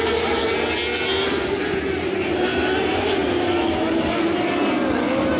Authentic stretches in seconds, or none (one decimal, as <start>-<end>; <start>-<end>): 0.4-1.3; 3.2-3.8